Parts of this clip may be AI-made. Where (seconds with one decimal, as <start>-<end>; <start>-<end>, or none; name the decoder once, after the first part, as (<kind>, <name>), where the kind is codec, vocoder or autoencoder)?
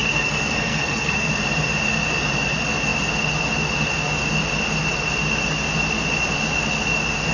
0.0-1.3 (codec, SNAC)